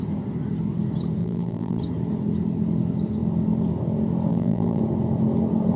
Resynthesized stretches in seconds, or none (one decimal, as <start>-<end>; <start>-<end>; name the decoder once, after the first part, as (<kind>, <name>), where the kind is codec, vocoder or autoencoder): 1.2-1.8 (vocoder, BigVGAN v2); 4.3-4.8